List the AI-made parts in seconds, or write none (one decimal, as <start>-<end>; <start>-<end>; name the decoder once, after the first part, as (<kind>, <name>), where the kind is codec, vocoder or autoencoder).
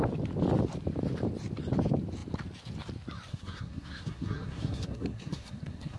3.3-6.0 (codec, SNAC)